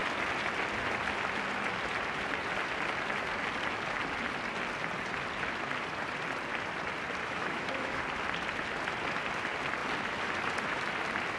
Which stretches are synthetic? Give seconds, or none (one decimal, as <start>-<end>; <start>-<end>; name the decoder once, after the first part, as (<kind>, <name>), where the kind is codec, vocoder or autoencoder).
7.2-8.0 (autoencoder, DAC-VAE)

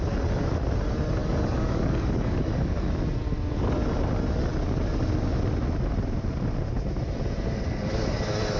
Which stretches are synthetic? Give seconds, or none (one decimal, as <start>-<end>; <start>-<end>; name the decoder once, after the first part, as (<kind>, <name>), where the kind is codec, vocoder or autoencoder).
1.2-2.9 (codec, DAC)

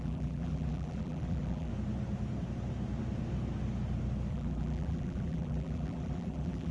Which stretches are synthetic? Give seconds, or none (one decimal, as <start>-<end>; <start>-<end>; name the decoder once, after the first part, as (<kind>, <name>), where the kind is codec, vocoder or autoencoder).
0.0-1.7 (vocoder, BigVGAN v2); 4.3-6.7

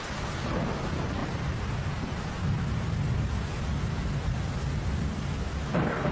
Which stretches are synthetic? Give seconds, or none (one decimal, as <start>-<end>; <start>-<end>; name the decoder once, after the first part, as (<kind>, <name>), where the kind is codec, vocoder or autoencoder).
none

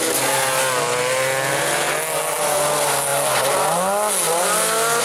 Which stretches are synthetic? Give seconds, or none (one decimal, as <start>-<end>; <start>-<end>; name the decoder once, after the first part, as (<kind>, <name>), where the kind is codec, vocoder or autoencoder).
none

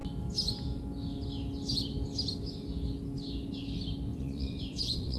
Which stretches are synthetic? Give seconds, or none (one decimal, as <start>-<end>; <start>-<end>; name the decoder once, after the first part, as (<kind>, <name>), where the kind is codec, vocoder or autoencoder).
4.1-5.2 (vocoder, Vocos)